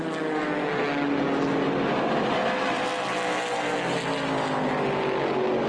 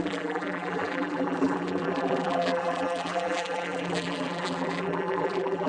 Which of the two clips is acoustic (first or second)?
first